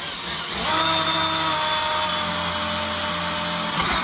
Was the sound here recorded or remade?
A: recorded